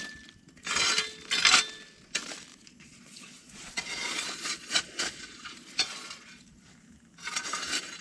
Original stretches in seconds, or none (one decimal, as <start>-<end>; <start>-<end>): 0.0-2.5; 6.7-8.0